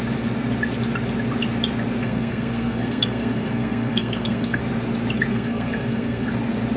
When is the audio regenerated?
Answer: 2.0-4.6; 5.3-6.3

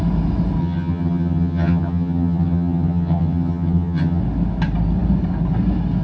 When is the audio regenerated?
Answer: 0.6-4.2

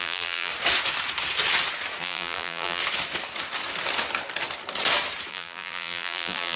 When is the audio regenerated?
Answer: 0.0-0.5; 2.0-2.8; 5.3-6.6

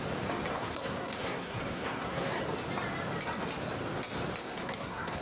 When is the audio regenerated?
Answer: 0.5-2.4; 4.4-5.2

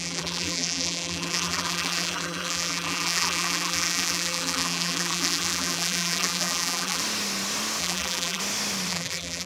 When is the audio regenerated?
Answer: 0.0-7.0; 7.8-8.4; 8.9-9.5